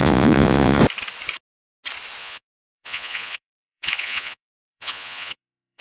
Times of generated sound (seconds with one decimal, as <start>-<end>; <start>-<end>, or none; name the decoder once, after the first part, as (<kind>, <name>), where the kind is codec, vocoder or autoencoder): 0.0-0.8 (vocoder, Vocos); 2.2-5.8